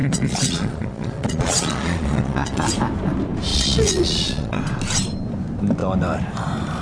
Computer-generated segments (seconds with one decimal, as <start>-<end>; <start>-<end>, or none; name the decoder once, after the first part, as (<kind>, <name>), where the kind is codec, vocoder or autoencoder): 0.0-2.7 (vocoder, Vocos); 3.5-4.6